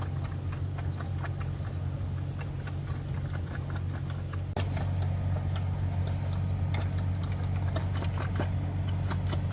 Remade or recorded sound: recorded